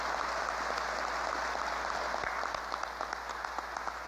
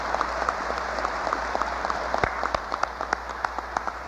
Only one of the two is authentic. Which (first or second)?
first